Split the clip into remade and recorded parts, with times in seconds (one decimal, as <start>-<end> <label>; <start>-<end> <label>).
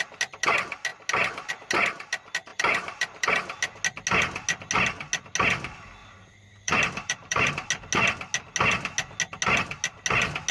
0.0-2.5 recorded; 2.5-3.3 remade; 3.3-6.0 recorded; 6.0-7.5 remade; 7.5-10.5 recorded